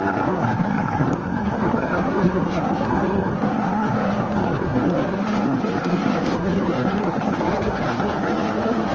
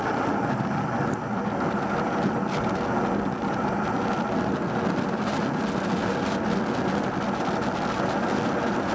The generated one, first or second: first